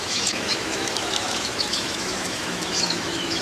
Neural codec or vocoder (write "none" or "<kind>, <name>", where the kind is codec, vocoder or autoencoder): autoencoder, DAC-VAE